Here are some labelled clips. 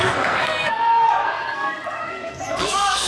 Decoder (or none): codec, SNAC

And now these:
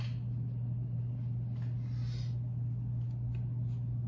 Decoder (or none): none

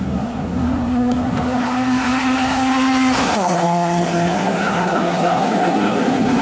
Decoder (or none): codec, SNAC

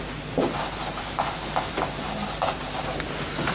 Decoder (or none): none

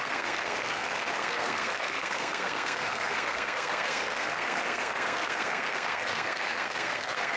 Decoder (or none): codec, SNAC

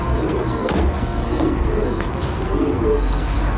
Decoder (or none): codec, SNAC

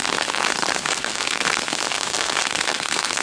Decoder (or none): codec, SNAC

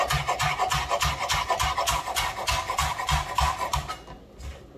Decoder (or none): none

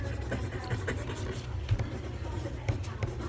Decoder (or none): none